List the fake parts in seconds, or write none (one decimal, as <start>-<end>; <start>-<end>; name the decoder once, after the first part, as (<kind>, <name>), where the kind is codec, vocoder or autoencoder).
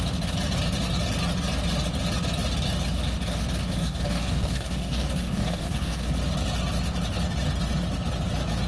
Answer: 3.8-6.1 (codec, DAC)